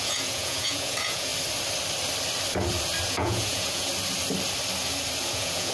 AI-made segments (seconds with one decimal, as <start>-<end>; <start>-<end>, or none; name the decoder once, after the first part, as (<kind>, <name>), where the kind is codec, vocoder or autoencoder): 0.0-1.3 (vocoder, Vocos); 3.1-3.9; 5.2-5.7